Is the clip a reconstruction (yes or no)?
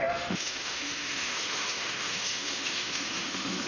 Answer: yes